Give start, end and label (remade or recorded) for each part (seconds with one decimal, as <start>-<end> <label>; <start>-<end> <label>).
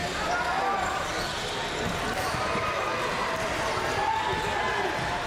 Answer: 0.0-5.3 recorded